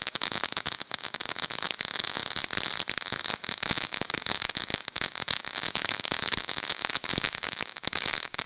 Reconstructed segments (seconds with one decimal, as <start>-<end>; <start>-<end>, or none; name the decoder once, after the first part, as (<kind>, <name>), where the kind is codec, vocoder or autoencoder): 0.0-2.2 (codec, DAC); 3.1-8.5